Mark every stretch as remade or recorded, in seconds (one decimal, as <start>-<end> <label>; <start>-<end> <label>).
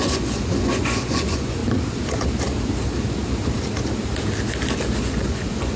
0.0-1.6 remade; 1.6-5.0 recorded; 5.0-5.8 remade